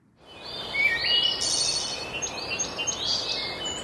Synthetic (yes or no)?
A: no